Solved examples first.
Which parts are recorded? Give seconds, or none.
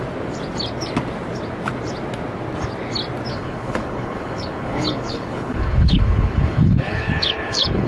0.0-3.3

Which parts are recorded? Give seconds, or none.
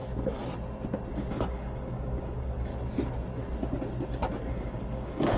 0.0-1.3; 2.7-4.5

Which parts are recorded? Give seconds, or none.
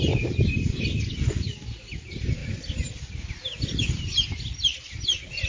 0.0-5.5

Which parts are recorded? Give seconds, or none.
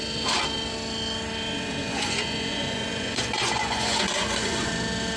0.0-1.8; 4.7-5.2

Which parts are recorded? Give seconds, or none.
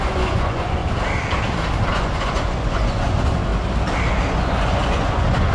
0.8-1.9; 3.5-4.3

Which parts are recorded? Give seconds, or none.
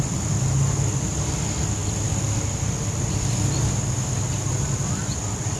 0.0-5.6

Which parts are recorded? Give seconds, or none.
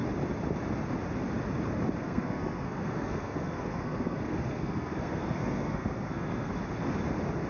0.0-2.0; 6.5-7.5